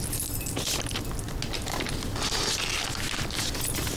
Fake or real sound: real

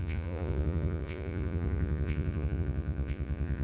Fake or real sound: fake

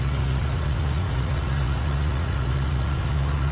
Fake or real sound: fake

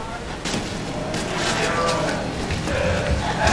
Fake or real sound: real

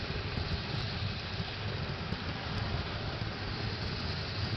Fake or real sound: real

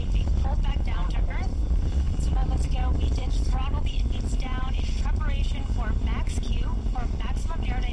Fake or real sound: fake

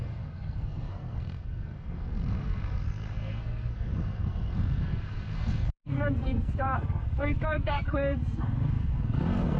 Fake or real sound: fake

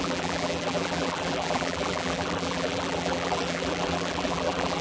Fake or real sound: fake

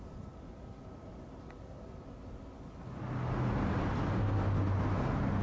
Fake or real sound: real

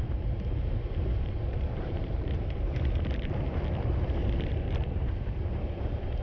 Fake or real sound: fake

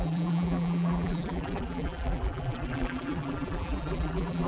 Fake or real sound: fake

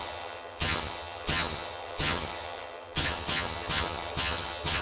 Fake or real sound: fake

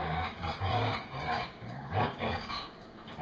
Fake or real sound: fake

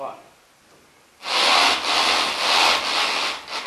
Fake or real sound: real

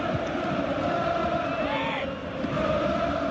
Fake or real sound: real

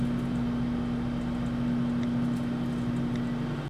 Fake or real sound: real